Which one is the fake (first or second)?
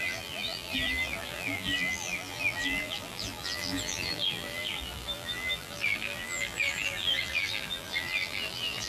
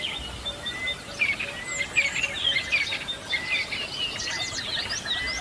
first